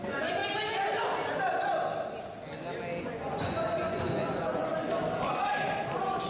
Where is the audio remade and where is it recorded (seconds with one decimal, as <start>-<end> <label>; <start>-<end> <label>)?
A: 0.0-0.4 remade; 0.4-3.0 recorded; 3.0-4.7 remade; 4.7-6.3 recorded